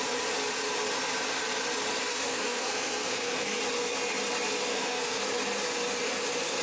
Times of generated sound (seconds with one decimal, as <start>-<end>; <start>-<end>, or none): 2.1-3.6; 4.7-5.2